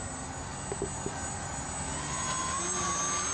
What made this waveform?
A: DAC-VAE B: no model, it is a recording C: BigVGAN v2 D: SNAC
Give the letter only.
B